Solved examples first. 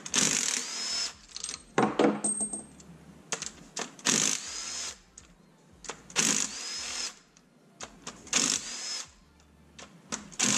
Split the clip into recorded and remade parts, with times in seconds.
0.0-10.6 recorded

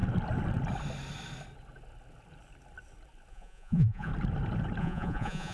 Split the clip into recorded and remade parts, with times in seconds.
0.0-3.3 recorded; 3.3-4.1 remade; 4.1-4.8 recorded; 4.8-5.5 remade

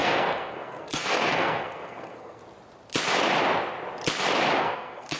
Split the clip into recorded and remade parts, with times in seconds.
0.0-2.4 remade; 2.4-4.6 recorded; 4.6-5.2 remade

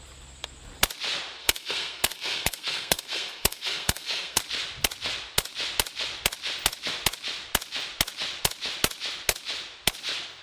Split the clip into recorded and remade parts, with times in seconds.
0.0-1.4 recorded; 1.4-4.4 remade; 4.4-10.4 recorded

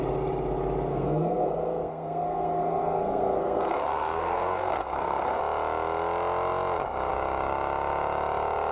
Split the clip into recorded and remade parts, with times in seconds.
0.0-0.9 recorded; 0.9-5.4 remade; 5.4-8.7 recorded

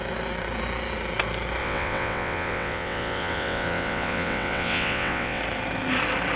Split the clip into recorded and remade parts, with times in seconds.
0.0-1.6 recorded; 1.6-5.4 remade; 5.4-6.4 recorded